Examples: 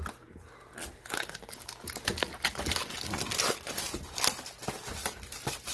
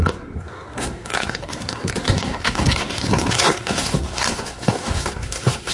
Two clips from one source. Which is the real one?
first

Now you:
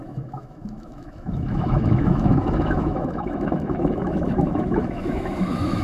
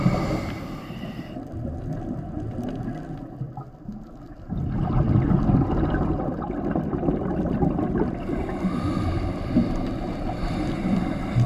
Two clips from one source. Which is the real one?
second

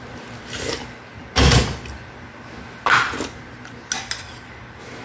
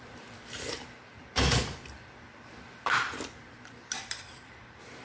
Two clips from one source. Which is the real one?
first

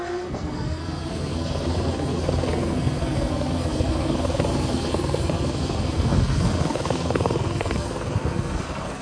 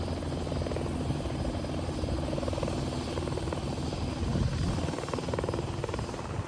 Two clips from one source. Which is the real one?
second